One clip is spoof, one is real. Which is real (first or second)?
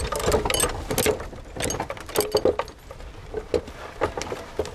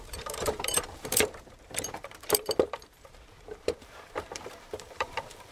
first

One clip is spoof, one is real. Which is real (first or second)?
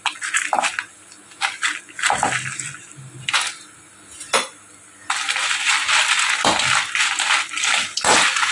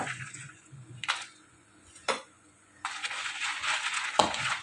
first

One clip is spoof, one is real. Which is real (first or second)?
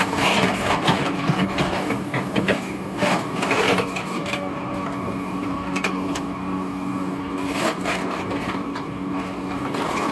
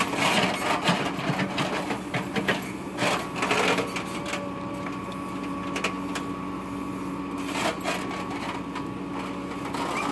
second